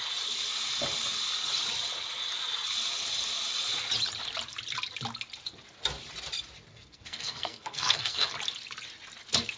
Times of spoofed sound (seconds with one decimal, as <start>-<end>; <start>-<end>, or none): 6.7-8.3

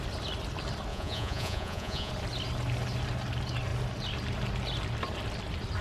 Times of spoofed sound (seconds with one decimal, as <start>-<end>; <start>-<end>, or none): 0.9-2.1

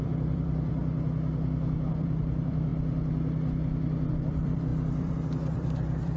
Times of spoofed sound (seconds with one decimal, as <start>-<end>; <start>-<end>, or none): 0.0-0.8; 1.9-2.7; 4.1-6.2